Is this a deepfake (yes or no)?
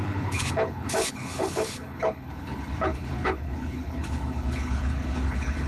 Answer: yes